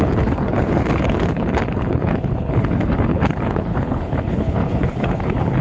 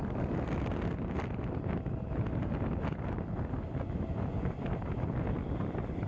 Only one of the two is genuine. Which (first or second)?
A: second